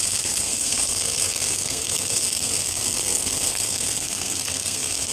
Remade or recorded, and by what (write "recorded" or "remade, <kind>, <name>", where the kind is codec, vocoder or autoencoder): remade, codec, SNAC